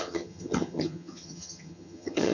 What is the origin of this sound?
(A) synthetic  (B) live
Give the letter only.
A